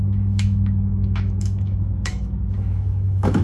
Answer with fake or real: fake